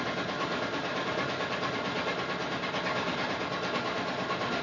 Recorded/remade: recorded